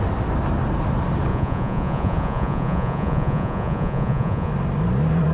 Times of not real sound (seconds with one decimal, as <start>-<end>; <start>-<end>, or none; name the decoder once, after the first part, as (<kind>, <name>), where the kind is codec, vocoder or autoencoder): 1.3-4.5 (vocoder, Vocos)